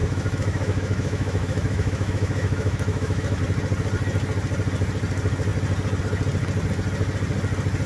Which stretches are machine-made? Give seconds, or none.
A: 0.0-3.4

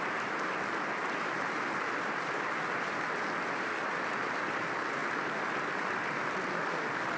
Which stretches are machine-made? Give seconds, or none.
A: none

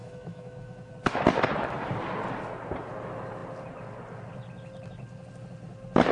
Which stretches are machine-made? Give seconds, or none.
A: 0.0-0.9

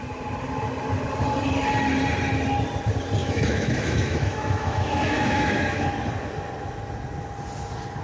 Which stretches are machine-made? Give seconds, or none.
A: 3.2-5.9

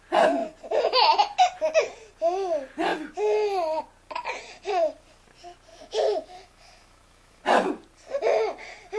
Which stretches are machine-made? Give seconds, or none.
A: 5.7-7.4

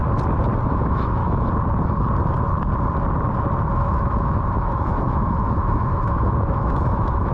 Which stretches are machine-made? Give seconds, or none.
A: 0.7-1.2; 3.7-7.3

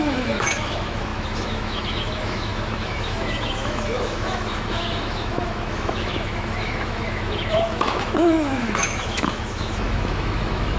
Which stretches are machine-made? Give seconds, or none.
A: 0.0-10.8